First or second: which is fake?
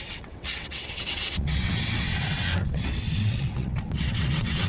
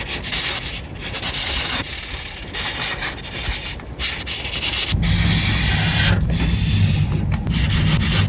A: first